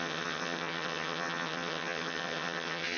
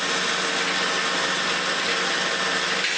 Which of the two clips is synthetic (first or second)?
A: first